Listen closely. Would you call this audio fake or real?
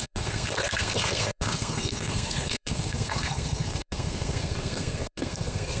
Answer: fake